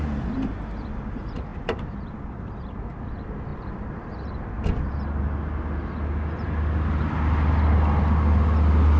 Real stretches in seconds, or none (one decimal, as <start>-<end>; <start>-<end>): 0.0-1.5; 2.6-3.5; 4.6-9.0